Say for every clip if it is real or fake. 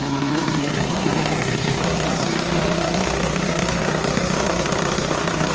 fake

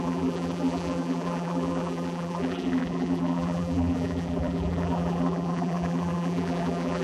fake